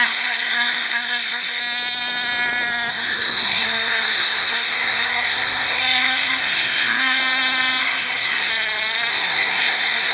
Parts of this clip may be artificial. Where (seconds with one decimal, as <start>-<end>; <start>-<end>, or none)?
0.0-1.6; 2.9-7.2; 7.8-8.5; 9.1-10.1